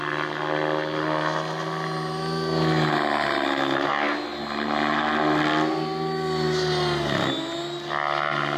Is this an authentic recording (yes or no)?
yes